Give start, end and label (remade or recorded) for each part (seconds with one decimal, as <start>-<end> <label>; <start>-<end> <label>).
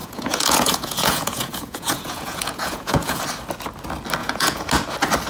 0.0-3.2 remade; 3.2-4.2 recorded; 4.2-4.7 remade; 4.7-5.3 recorded